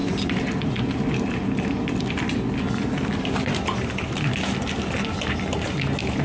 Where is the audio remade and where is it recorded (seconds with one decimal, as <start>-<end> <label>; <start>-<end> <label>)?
0.0-6.2 recorded